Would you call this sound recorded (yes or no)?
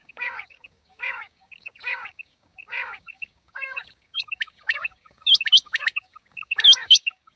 no